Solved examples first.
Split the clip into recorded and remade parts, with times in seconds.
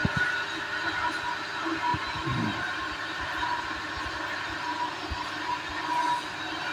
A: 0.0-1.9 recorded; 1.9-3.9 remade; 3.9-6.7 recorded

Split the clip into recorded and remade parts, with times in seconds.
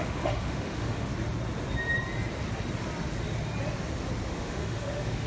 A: 0.0-1.1 remade; 1.1-4.3 recorded; 4.3-5.3 remade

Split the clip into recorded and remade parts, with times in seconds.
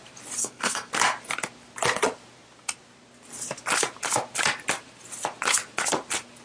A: 0.0-0.4 recorded; 0.4-0.9 remade; 0.9-6.4 recorded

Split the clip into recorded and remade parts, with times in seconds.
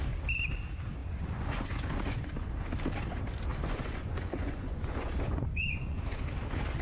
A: 0.0-1.0 recorded; 1.0-2.5 remade; 2.5-3.5 recorded; 3.5-6.2 remade; 6.2-6.8 recorded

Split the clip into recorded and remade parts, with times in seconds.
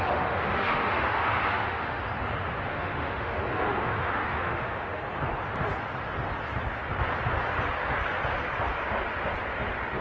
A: 0.0-2.0 remade; 2.0-2.7 recorded; 2.7-5.0 remade; 5.0-10.0 recorded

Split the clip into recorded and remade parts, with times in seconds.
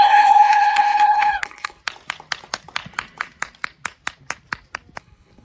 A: 0.0-1.8 remade; 1.8-5.0 recorded; 5.0-5.4 remade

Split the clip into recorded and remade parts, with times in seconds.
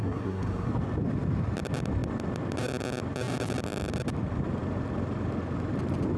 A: 0.0-0.7 remade; 0.7-6.2 recorded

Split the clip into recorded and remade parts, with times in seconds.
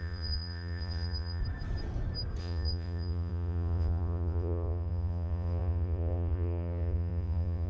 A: 0.0-1.4 remade; 1.4-2.4 recorded; 2.4-7.7 remade